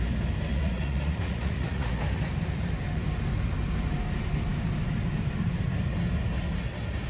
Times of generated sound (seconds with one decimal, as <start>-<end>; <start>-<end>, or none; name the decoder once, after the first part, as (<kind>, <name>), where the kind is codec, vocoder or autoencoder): 0.5-2.0 (vocoder, Vocos)